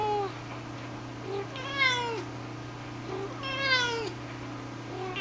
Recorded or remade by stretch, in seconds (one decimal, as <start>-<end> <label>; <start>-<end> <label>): 0.0-5.2 recorded